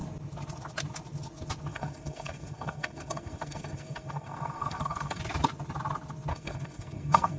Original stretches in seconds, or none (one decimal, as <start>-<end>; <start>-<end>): 0.0-1.7; 5.2-6.3